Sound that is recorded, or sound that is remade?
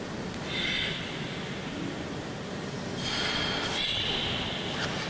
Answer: recorded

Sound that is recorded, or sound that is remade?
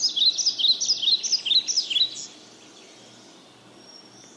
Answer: recorded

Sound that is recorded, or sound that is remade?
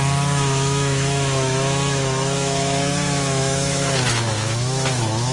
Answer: remade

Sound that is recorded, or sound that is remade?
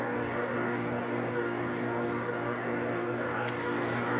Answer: remade